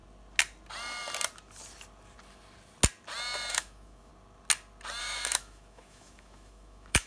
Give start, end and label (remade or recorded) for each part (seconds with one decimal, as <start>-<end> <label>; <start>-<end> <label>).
0.0-3.5 recorded; 3.5-4.1 remade; 4.1-5.0 recorded; 5.0-7.1 remade